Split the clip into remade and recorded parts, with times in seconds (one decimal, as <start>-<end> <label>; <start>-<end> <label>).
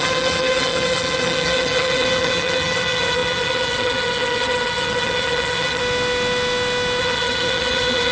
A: 0.0-5.8 remade; 5.8-7.0 recorded; 7.0-8.1 remade